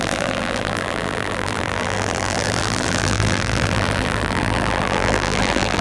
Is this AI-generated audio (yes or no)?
yes